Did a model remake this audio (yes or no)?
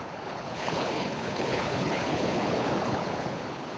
yes